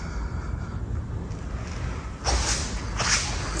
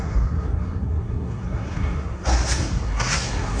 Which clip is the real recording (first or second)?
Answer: first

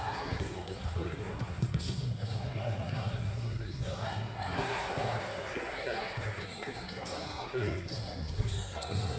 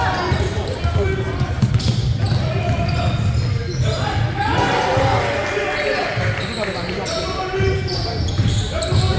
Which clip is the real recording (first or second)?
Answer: second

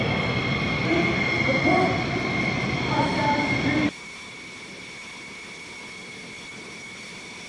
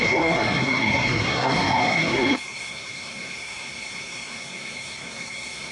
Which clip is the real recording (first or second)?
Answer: first